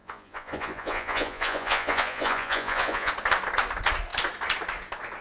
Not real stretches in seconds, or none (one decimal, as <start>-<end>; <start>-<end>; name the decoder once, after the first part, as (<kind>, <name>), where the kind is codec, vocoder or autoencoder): 0.0-3.1 (vocoder, Vocos)